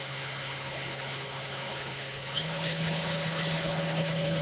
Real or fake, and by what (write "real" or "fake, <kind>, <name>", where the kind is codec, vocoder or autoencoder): fake, codec, HILCodec